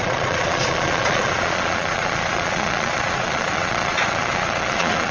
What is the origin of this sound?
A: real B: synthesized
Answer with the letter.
B